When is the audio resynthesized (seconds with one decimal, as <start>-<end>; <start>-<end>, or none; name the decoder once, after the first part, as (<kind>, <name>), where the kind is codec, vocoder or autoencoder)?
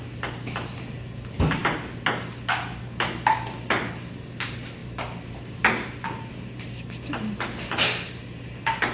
none